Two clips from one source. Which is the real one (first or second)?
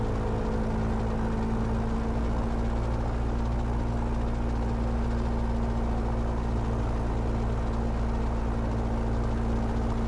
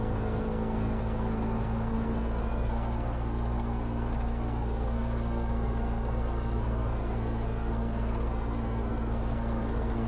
first